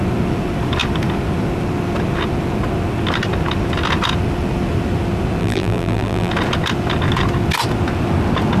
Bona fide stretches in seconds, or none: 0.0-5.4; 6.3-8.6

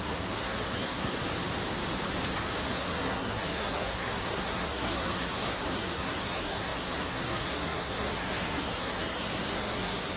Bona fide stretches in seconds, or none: 1.2-2.7

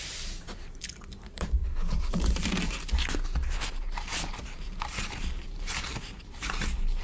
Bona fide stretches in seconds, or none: 1.6-2.1

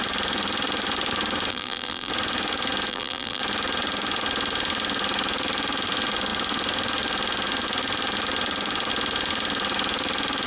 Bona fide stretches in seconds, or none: 0.0-1.5; 2.1-2.9; 3.4-10.5

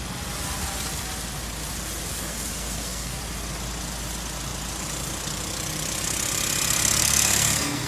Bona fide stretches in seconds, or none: 0.0-2.1; 3.2-7.0

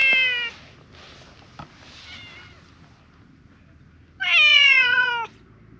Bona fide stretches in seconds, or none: 0.0-4.5; 5.1-5.8